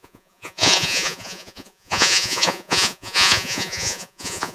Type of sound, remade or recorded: remade